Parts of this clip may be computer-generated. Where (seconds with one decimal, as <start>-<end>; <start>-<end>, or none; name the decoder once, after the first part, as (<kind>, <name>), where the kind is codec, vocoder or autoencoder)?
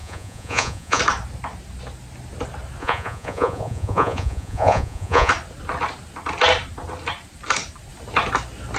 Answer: 0.0-1.0 (vocoder, Vocos); 2.8-5.3